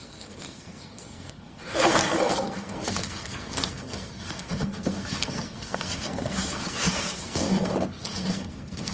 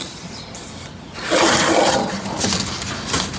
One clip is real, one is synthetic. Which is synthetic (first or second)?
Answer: first